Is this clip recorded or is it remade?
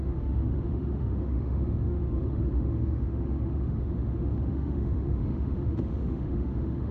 remade